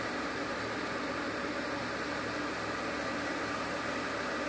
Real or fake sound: real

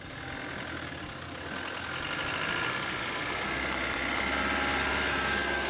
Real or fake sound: real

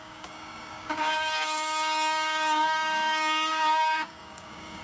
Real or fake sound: fake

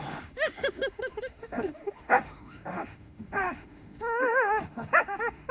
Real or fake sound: fake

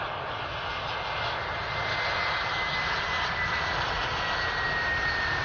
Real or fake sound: real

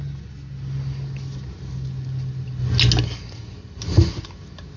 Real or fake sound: real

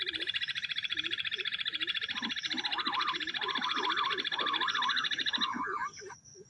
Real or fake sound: real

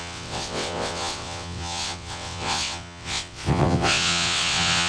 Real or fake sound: fake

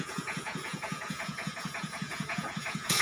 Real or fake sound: fake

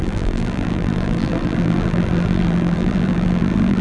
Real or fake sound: fake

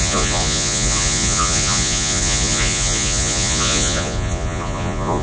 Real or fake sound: fake